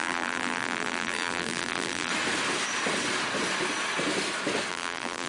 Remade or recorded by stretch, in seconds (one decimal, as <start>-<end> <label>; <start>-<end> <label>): 0.0-2.1 remade; 2.1-4.7 recorded; 4.7-5.3 remade